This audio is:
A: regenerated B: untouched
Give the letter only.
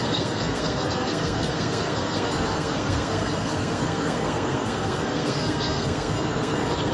A